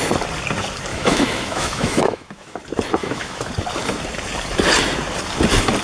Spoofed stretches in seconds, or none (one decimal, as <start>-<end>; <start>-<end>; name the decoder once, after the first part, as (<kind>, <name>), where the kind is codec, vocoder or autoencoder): 0.9-2.6 (autoencoder, DAC-VAE); 3.0-3.5